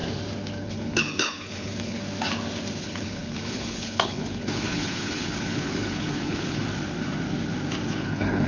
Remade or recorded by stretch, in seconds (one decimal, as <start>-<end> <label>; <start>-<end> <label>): 0.0-0.6 recorded; 0.6-2.0 remade; 2.0-2.8 recorded; 2.8-6.6 remade; 6.6-8.0 recorded; 8.0-8.5 remade